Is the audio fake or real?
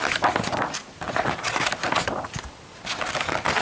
real